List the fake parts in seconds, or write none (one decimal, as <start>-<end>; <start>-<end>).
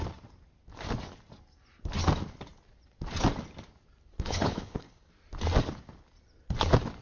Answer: 4.1-5.1